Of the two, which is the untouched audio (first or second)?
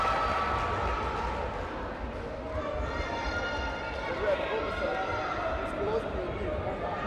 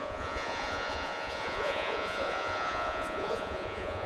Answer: first